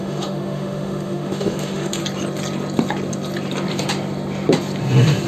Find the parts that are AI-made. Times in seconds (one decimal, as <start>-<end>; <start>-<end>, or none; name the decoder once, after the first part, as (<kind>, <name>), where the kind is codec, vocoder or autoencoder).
0.0-2.0 (autoencoder, DAC-VAE)